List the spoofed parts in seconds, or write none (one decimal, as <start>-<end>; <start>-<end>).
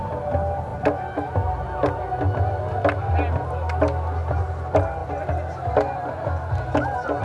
none